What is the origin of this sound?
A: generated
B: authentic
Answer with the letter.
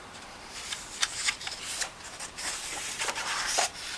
A